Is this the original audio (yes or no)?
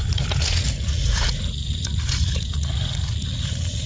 no